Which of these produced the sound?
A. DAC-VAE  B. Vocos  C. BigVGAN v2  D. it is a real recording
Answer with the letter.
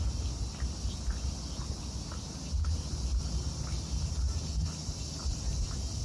D